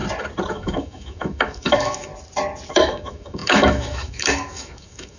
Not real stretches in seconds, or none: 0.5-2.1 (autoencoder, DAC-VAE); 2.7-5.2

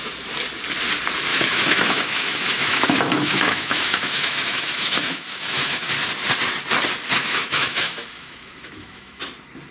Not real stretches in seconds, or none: 1.3-5.9 (autoencoder, DAC-VAE); 7.2-9.2

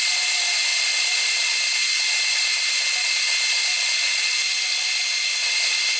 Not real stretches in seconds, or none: none

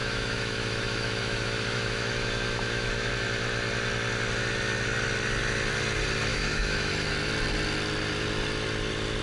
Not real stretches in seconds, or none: 0.0-3.1 (autoencoder, DAC-VAE); 6.3-6.9

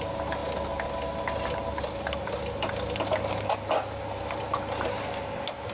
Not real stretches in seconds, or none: none